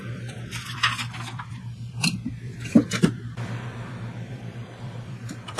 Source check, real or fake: fake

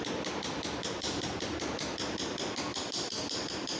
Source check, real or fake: fake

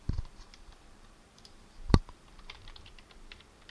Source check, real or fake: fake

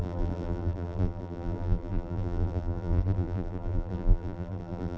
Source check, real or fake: fake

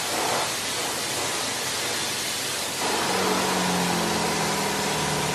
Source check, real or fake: real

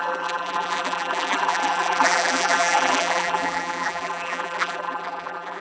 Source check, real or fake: fake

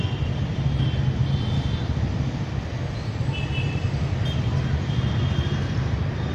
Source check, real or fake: real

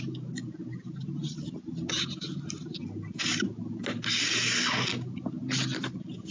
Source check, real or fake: real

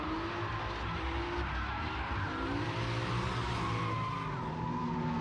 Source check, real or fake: real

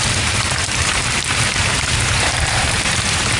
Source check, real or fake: fake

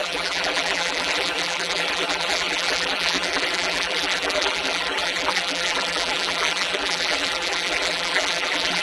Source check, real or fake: fake